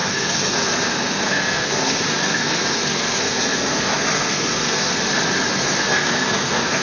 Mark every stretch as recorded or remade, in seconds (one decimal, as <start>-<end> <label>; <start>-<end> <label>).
0.0-4.9 remade; 4.9-5.5 recorded; 5.5-6.8 remade